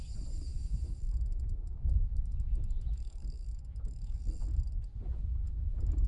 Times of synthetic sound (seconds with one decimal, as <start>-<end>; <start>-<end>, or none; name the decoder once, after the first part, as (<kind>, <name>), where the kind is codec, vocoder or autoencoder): 0.5-4.2 (autoencoder, DAC-VAE)